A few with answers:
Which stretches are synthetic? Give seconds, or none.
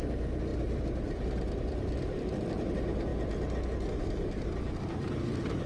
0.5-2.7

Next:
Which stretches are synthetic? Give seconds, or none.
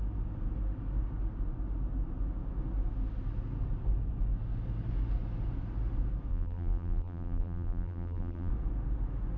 6.3-8.5